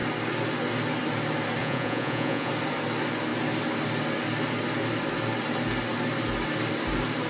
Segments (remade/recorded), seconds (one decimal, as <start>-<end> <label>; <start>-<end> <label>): 0.0-1.6 recorded; 1.6-2.5 remade; 2.5-7.3 recorded